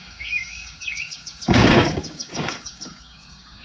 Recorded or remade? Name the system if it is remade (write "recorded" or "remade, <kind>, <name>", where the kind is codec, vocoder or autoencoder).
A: remade, codec, DAC